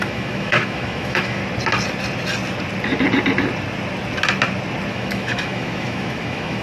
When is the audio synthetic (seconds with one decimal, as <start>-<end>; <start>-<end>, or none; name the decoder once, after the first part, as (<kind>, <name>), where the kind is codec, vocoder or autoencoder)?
0.0-1.4 (autoencoder, DAC-VAE); 4.9-6.6